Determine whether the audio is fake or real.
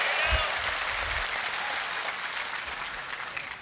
real